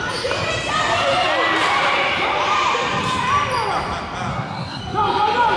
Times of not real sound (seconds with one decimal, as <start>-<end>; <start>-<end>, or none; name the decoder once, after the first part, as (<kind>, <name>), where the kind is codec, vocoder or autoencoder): 4.3-4.8 (codec, SNAC)